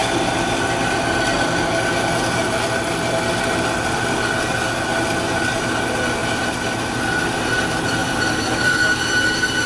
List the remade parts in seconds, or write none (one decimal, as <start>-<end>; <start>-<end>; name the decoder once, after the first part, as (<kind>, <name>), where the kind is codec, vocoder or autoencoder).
8.0-8.8 (vocoder, BigVGAN v2)